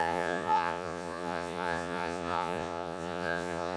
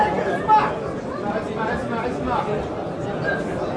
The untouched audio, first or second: second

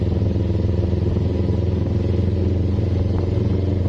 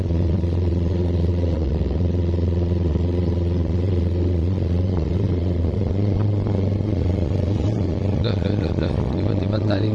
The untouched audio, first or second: first